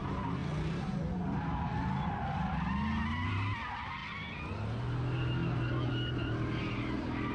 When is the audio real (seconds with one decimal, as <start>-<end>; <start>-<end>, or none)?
0.0-7.3